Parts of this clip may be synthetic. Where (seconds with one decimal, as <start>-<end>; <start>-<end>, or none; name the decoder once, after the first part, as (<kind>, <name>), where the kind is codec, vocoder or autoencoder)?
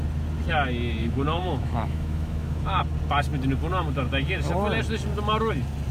1.0-2.8 (autoencoder, DAC-VAE)